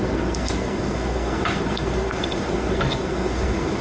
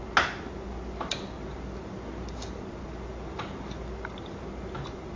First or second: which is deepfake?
first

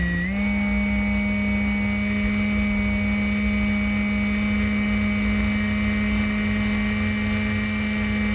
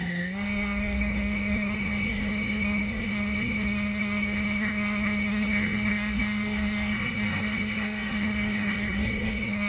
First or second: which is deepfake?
second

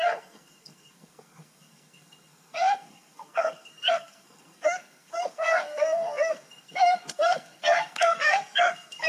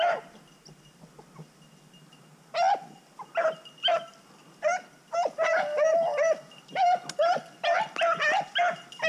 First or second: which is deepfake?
first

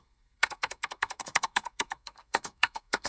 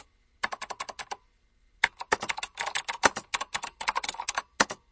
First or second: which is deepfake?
first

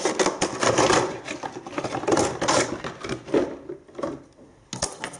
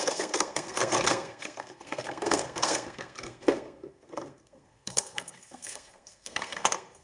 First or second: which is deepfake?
second